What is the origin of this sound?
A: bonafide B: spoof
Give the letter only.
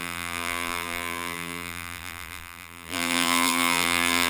B